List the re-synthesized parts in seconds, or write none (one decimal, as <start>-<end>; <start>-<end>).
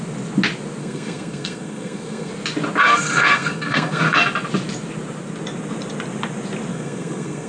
0.8-2.3; 2.9-4.0; 6.7-7.5